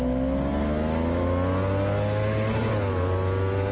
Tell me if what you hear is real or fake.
real